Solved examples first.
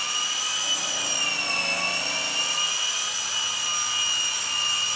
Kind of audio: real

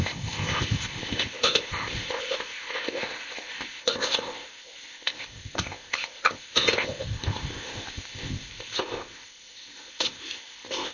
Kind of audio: fake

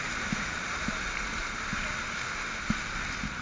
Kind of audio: real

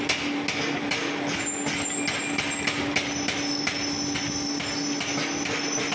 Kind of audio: real